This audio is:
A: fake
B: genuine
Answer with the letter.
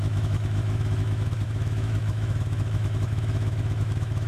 A